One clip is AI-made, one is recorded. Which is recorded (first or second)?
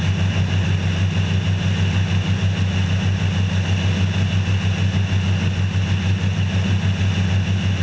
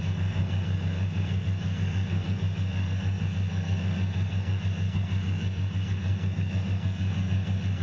first